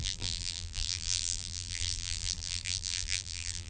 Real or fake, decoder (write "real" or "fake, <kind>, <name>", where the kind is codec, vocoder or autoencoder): fake, vocoder, BigVGAN v2